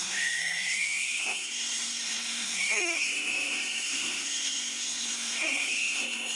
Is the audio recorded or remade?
remade